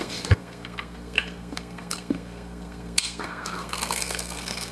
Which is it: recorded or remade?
remade